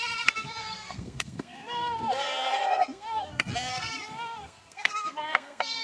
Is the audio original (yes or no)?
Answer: no